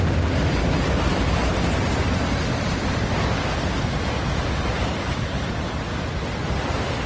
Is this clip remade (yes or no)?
no